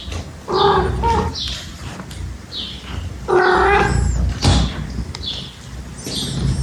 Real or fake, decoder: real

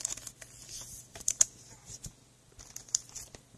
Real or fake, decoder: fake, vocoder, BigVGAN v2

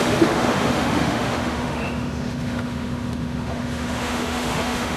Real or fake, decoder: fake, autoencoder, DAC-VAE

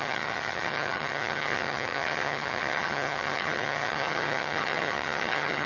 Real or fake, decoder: fake, vocoder, HiFi-GAN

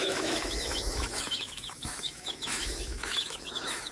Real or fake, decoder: fake, autoencoder, DAC-VAE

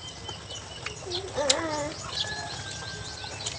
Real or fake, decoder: real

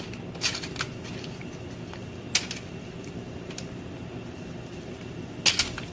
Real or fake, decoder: real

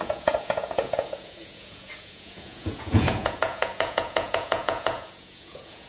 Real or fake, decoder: fake, vocoder, Vocos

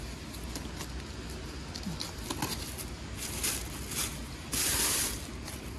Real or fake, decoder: real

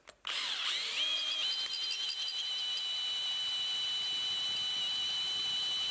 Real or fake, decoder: real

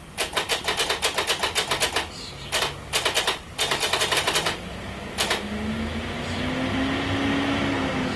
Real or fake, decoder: fake, vocoder, BigVGAN v2